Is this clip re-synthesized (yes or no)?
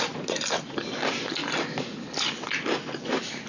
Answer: no